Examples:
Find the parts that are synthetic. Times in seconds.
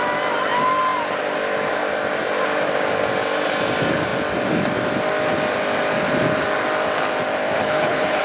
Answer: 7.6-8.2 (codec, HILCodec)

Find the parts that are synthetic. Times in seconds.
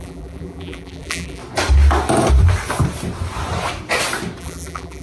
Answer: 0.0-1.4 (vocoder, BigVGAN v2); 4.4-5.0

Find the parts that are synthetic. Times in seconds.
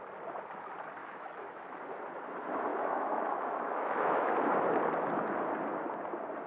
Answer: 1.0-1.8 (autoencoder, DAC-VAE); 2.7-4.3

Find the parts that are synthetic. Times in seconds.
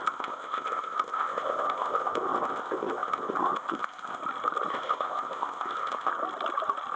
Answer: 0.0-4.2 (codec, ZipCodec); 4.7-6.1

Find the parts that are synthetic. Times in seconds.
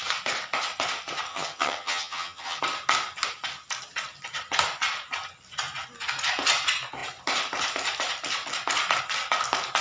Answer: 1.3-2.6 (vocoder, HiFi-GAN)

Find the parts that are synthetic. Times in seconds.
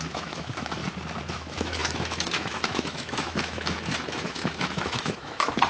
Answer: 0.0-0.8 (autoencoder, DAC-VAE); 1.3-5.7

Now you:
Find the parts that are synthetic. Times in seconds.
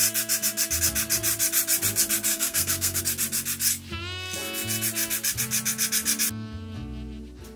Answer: 2.3-3.0 (codec, SNAC)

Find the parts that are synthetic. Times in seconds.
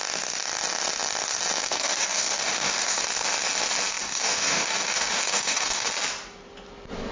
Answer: 1.6-3.0 (codec, DAC); 4.0-5.9